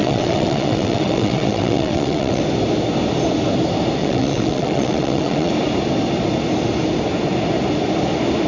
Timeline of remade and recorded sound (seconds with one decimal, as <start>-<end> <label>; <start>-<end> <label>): 0.0-2.4 remade; 2.4-4.0 recorded; 4.0-5.5 remade; 5.5-8.5 recorded